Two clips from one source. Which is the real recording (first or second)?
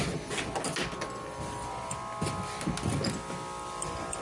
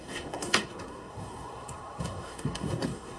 first